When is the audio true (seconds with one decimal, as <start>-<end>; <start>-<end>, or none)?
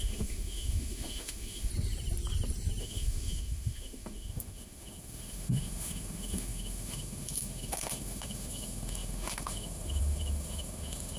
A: 1.7-2.8